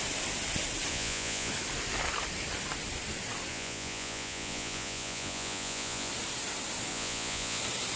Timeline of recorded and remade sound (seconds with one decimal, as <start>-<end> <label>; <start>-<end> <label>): 0.0-0.9 recorded; 0.9-1.5 remade; 1.5-3.5 recorded; 3.5-6.1 remade; 6.1-6.9 recorded; 6.9-7.6 remade; 7.6-8.0 recorded